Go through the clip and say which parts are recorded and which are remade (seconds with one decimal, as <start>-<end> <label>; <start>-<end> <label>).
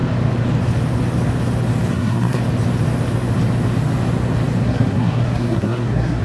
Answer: 0.0-1.9 recorded; 1.9-2.4 remade; 2.4-4.6 recorded; 4.6-6.2 remade